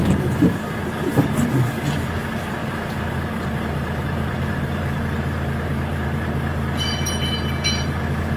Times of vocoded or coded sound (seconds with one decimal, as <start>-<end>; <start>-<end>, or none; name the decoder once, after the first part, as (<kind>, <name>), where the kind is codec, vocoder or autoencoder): 0.0-0.5 (vocoder, BigVGAN v2); 2.6-5.0